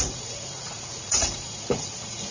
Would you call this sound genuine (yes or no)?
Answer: no